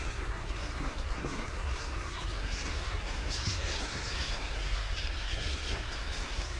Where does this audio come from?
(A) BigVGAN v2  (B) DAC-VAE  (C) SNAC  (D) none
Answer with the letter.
C